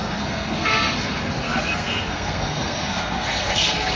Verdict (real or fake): fake